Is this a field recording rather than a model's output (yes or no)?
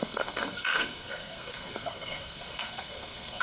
no